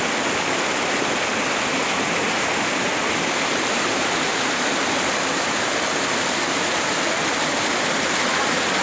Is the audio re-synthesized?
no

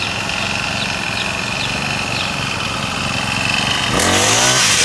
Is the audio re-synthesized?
no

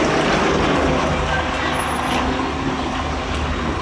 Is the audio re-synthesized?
no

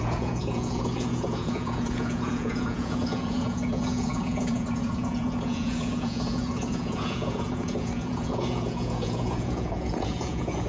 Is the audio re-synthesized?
yes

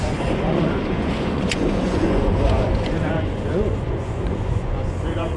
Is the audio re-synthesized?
yes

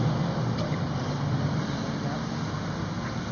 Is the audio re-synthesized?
no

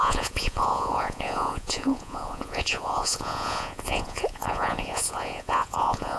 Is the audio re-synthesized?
yes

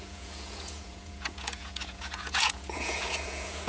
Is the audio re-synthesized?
yes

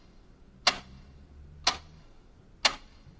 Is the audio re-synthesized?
no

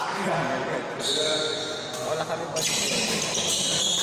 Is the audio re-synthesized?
no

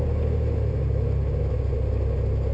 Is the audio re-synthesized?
no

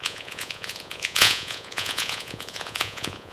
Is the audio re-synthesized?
yes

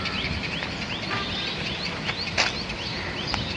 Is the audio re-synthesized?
no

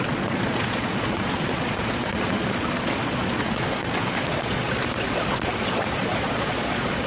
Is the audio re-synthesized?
yes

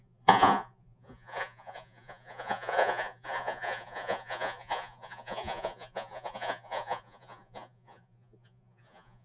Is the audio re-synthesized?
yes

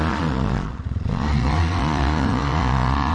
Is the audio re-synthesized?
yes